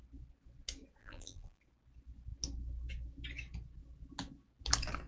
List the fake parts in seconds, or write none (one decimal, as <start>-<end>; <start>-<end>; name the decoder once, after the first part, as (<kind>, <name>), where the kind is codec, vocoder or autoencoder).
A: 1.0-1.6 (vocoder, BigVGAN v2)